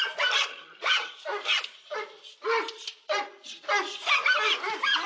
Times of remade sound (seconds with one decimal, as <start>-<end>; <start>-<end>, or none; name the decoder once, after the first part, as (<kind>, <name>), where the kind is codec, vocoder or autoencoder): 0.5-1.2 (vocoder, HiFi-GAN)